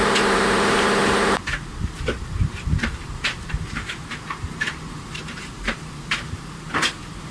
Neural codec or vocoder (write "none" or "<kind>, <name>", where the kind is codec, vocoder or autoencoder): vocoder, BigVGAN v2